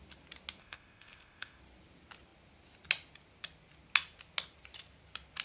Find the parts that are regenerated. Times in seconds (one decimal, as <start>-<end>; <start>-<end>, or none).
0.6-1.6